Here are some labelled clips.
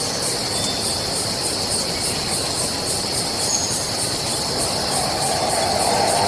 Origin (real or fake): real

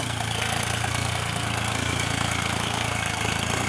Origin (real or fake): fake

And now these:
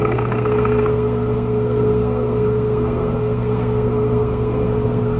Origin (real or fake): fake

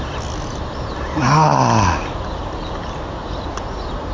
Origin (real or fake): real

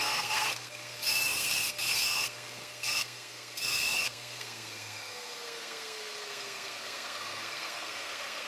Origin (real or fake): fake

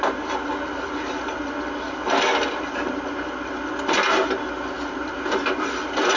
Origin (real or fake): real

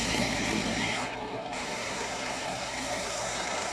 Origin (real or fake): fake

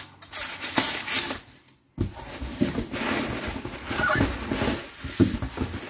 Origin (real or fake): real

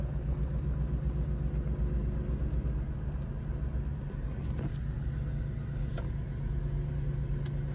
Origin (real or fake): real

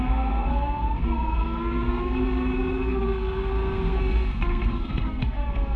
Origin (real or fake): fake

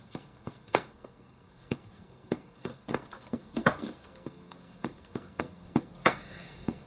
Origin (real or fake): fake